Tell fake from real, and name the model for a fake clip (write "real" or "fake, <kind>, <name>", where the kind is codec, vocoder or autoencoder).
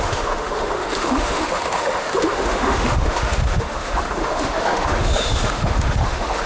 fake, autoencoder, DAC-VAE